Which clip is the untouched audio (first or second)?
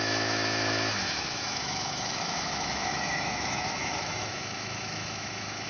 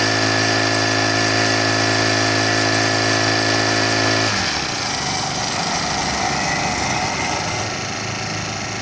second